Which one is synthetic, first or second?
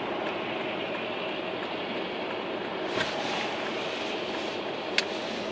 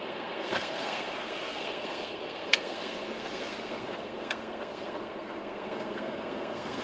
second